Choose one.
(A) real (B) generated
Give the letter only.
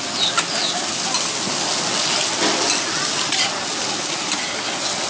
A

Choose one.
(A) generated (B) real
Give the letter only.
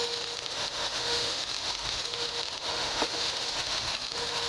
A